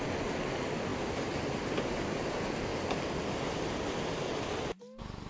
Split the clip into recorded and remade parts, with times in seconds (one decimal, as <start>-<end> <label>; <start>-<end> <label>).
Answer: 0.0-5.3 recorded